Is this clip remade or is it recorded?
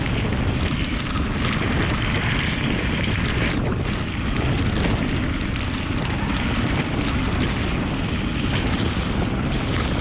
recorded